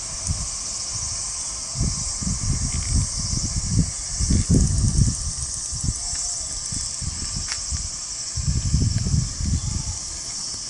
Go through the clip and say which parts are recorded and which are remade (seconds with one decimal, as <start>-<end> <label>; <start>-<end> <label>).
0.0-4.7 recorded; 4.7-5.4 remade; 5.4-10.7 recorded